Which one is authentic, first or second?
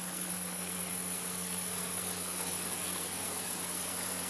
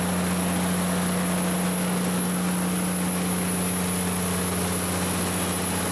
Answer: second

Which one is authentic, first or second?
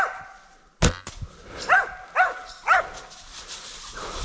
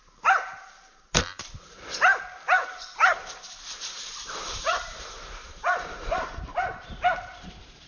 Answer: first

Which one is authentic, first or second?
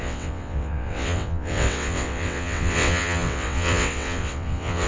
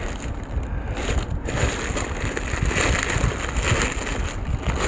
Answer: second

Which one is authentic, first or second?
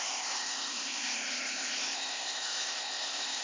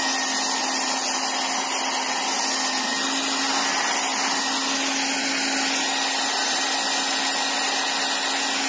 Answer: second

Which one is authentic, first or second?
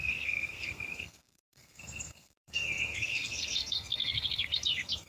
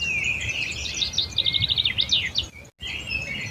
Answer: second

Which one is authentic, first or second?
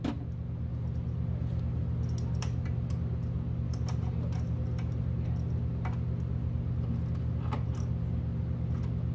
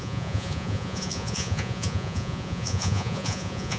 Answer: first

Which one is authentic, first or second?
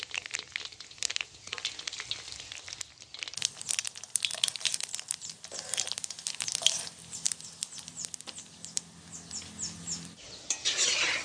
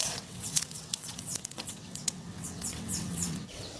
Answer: first